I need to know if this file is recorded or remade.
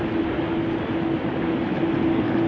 recorded